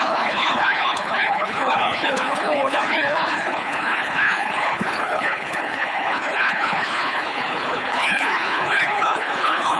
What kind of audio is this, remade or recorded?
remade